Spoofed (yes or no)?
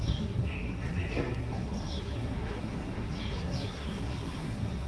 yes